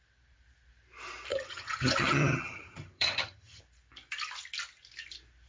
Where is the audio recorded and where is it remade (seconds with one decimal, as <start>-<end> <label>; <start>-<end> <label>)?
0.0-1.3 recorded; 1.3-3.6 remade; 3.6-5.5 recorded